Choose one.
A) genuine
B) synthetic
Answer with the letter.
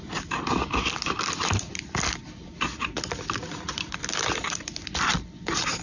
B